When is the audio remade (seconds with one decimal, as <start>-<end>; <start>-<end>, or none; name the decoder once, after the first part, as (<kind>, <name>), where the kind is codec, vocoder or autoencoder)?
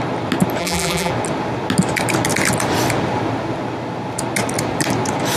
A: 0.6-1.1 (vocoder, BigVGAN v2)